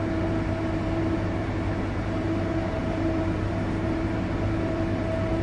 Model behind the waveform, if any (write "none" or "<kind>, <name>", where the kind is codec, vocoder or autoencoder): vocoder, BigVGAN v2